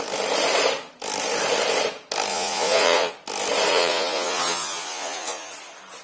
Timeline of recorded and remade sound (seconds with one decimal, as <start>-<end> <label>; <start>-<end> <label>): 0.0-2.3 recorded; 2.3-3.1 remade; 3.1-3.7 recorded; 3.7-5.5 remade; 5.5-6.0 recorded